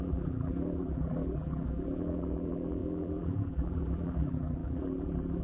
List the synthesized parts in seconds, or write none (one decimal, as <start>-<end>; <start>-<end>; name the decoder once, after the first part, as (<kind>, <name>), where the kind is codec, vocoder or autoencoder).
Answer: 0.0-5.4 (vocoder, BigVGAN v2)